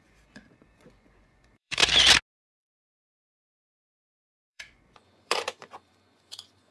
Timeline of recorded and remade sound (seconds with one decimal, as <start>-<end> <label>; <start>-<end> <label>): 0.0-1.8 remade; 1.8-2.6 recorded; 2.6-6.7 remade